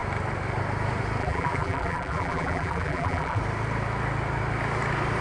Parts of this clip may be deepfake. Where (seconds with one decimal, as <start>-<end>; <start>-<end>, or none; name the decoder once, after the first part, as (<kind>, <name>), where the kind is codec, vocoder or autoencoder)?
1.2-3.4 (vocoder, BigVGAN v2)